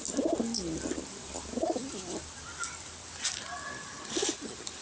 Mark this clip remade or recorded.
recorded